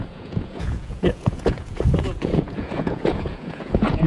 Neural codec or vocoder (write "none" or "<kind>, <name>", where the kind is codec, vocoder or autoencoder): vocoder, Vocos